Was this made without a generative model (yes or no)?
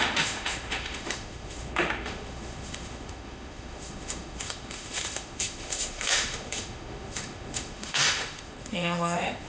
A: no